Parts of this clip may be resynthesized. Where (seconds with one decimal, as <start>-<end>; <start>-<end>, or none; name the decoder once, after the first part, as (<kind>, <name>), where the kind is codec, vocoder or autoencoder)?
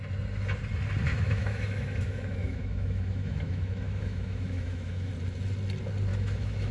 1.1-5.1 (autoencoder, DAC-VAE); 6.1-6.7